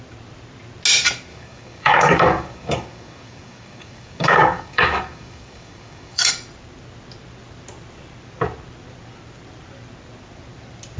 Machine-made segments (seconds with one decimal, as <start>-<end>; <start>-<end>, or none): 1.3-6.3